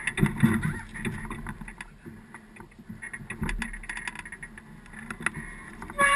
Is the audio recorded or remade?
recorded